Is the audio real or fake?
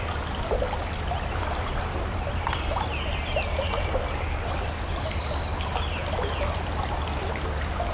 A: real